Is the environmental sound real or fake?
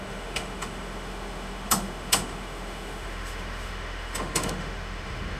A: fake